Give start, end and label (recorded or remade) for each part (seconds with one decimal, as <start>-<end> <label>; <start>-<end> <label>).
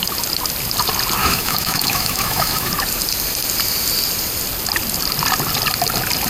0.0-1.2 recorded; 1.2-2.7 remade; 2.7-6.3 recorded